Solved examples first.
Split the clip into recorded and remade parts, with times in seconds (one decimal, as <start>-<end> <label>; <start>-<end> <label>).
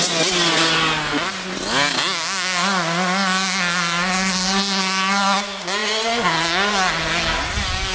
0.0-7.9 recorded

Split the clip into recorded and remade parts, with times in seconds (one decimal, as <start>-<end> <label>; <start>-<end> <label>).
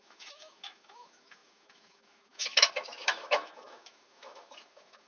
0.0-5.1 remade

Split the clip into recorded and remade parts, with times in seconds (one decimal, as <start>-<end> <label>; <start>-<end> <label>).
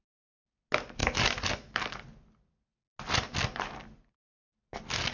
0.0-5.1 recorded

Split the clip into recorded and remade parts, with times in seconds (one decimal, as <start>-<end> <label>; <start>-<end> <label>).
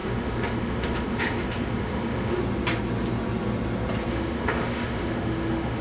0.0-2.4 remade; 2.4-4.1 recorded; 4.1-5.8 remade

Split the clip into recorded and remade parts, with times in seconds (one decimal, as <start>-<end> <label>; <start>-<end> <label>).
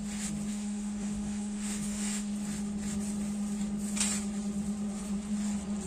0.0-0.5 recorded; 0.5-2.3 remade; 2.3-5.9 recorded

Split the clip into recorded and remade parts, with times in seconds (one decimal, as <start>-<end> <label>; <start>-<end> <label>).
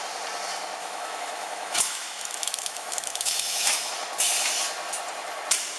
0.0-0.8 recorded; 0.8-3.9 remade; 3.9-5.8 recorded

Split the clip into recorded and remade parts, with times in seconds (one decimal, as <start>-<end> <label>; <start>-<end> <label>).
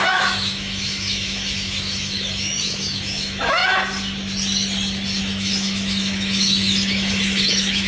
0.0-3.6 remade; 3.6-5.2 recorded; 5.2-7.9 remade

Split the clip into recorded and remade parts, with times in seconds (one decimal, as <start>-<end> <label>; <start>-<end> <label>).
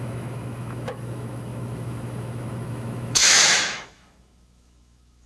0.0-5.3 remade